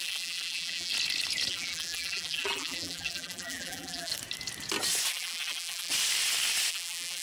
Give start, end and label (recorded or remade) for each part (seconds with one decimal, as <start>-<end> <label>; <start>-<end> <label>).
0.0-0.9 remade; 0.9-1.5 recorded; 1.5-4.1 remade; 4.1-5.1 recorded; 5.1-5.9 remade; 5.9-6.7 recorded; 6.7-7.2 remade